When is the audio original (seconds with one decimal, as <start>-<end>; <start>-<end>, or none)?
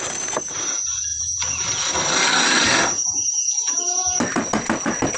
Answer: 0.0-5.2